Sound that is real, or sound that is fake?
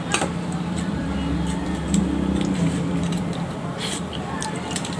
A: fake